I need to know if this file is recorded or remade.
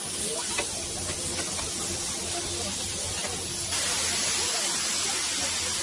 recorded